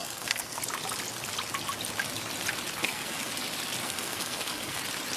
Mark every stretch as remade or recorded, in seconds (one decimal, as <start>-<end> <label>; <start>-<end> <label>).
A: 0.0-0.6 remade; 0.6-2.8 recorded; 2.8-3.3 remade; 3.3-3.8 recorded; 3.8-4.8 remade; 4.8-5.2 recorded